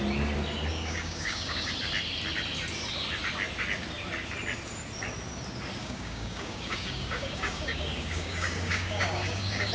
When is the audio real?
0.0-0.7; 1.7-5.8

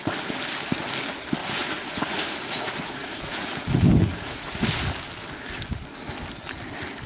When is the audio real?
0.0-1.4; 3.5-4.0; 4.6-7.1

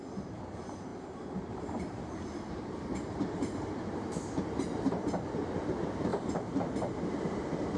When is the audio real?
none

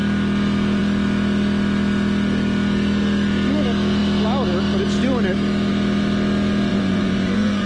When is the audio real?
0.0-6.7